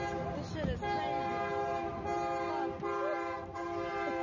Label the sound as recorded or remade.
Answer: recorded